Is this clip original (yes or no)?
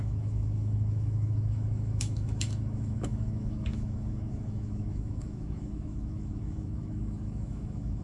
no